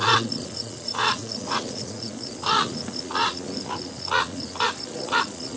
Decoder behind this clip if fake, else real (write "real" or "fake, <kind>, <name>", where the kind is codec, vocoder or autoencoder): fake, vocoder, Vocos